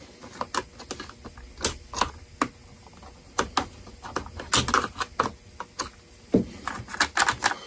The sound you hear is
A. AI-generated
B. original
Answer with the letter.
B